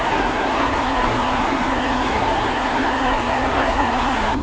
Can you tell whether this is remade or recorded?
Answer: remade